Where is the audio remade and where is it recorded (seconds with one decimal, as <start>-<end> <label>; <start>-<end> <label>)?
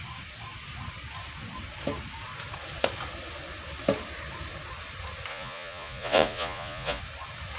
0.0-5.3 recorded; 5.3-7.0 remade; 7.0-7.6 recorded